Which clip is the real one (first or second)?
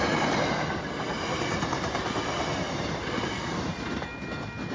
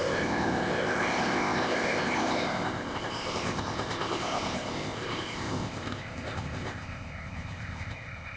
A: first